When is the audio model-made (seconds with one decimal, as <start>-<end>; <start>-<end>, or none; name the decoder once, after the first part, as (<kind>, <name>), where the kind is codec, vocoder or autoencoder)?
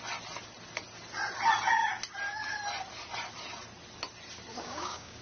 4.5-5.2 (codec, DAC)